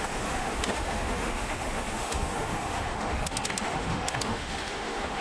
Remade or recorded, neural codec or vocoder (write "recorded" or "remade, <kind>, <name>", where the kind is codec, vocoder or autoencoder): remade, autoencoder, DAC-VAE